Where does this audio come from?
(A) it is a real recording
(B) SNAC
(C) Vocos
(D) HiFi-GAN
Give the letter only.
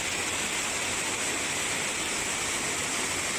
A